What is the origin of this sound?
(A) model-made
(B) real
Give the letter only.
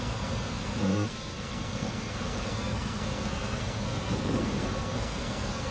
A